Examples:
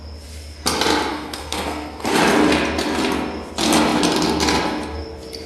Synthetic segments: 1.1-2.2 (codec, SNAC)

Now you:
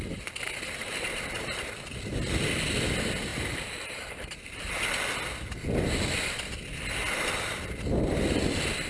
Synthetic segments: 0.8-1.6 (vocoder, BigVGAN v2); 3.3-4.7

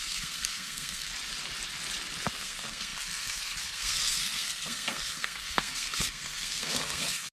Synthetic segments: 0.0-1.1 (codec, SNAC); 2.3-7.3

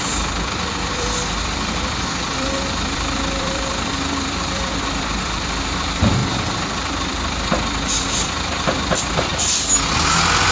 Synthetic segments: 0.0-9.3 (vocoder, BigVGAN v2); 10.1-10.5

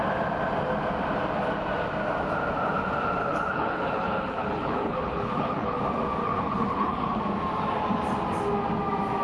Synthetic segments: 3.2-5.8 (codec, HILCodec); 6.2-7.2

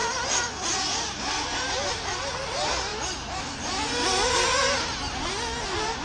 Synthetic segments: none